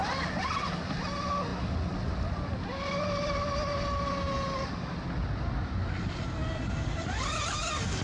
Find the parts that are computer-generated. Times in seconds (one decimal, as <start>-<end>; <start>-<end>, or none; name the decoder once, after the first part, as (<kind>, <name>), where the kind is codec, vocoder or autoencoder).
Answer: none